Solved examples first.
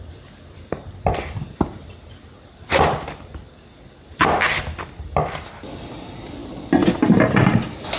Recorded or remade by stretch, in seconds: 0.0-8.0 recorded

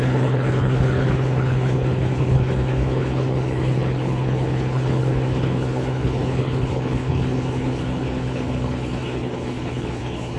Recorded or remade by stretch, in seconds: 0.0-10.4 remade

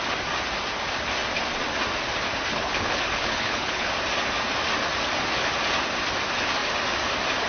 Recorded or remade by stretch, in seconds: 0.0-2.5 recorded; 2.5-3.9 remade; 3.9-7.5 recorded

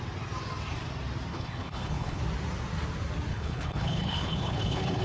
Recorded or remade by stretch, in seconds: 0.0-1.3 recorded; 1.3-2.2 remade; 2.2-3.3 recorded; 3.3-5.0 remade

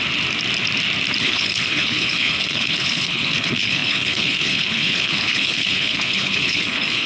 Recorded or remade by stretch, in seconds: 0.0-1.2 recorded; 1.2-7.1 remade